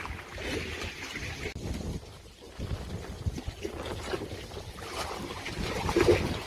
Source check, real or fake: real